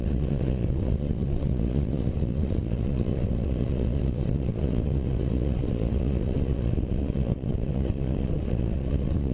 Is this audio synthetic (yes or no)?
yes